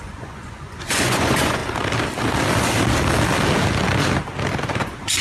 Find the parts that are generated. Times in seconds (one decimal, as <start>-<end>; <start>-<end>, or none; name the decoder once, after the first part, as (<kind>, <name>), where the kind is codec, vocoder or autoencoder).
0.0-1.6 (vocoder, Vocos); 4.7-5.2